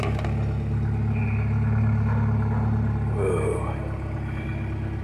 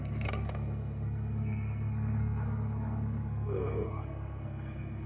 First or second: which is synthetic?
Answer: second